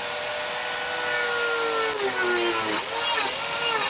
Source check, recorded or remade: recorded